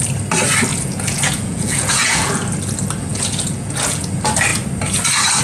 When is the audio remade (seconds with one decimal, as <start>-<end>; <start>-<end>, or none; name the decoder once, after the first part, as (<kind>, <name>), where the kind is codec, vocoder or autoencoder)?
0.7-2.3 (vocoder, Vocos); 3.1-4.1